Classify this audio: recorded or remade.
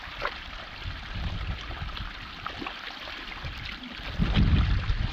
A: recorded